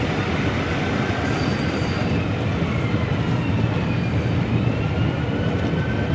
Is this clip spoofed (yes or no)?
no